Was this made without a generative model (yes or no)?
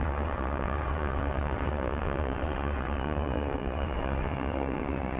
no